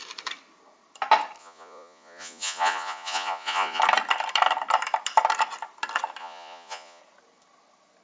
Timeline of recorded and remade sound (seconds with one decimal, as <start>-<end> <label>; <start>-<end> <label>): 0.0-1.4 recorded; 1.4-3.8 remade; 3.8-6.2 recorded; 6.2-7.0 remade; 7.0-8.0 recorded